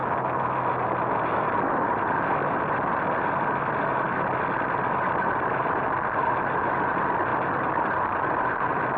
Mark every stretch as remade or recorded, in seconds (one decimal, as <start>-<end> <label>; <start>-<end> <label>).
0.0-9.0 recorded